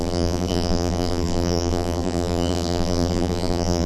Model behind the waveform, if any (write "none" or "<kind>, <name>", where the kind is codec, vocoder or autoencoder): vocoder, BigVGAN v2